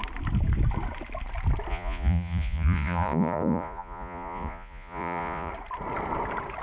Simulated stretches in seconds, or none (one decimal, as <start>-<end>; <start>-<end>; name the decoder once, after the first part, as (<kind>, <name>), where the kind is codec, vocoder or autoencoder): 1.7-5.5 (vocoder, Vocos)